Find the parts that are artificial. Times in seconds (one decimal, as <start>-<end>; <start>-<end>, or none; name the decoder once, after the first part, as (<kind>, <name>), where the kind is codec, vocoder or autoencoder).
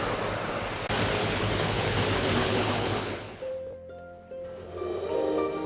1.2-3.5 (codec, HILCodec)